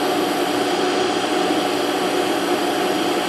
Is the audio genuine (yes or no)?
yes